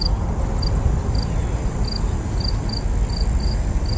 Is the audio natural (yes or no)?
yes